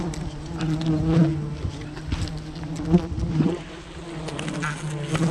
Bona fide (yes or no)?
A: yes